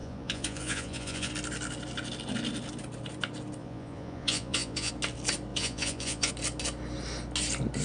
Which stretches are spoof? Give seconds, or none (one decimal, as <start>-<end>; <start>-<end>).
0.0-1.3; 3.6-4.9; 5.5-6.3